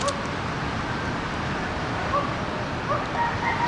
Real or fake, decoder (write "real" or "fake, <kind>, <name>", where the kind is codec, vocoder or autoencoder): real